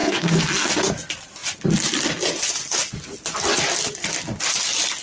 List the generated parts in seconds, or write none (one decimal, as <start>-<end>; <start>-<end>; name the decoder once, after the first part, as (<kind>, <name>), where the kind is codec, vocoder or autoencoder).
0.0-0.7 (codec, SNAC)